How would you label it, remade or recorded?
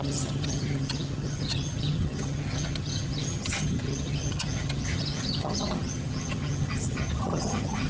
remade